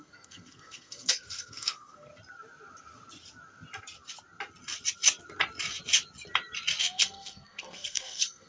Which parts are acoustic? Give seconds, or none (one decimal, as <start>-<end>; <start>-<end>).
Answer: 2.1-6.8